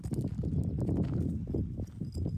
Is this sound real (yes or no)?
yes